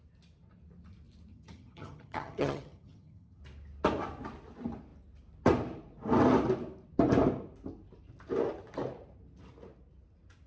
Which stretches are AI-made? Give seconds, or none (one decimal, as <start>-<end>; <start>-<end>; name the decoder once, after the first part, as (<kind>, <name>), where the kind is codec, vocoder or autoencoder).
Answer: 1.3-3.4 (vocoder, HiFi-GAN)